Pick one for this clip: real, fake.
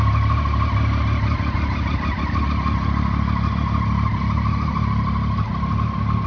real